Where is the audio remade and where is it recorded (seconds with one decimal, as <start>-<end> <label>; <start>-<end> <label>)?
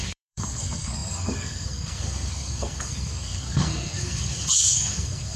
0.0-5.4 remade